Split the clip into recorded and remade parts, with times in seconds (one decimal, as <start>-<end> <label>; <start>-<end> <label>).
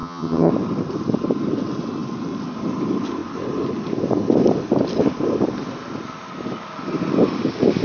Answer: 0.0-0.5 remade; 0.5-7.8 recorded